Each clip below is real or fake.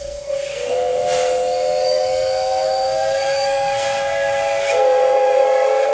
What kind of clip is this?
fake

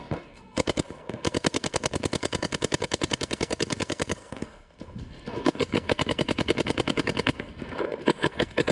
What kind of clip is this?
fake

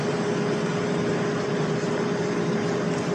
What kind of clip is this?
real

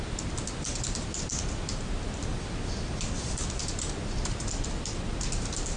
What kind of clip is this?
real